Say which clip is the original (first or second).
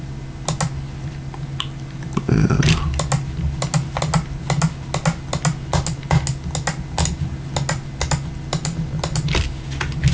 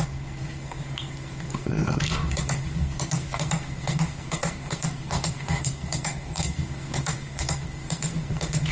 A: first